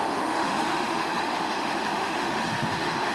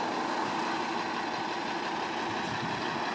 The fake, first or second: first